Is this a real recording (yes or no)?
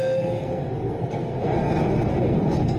no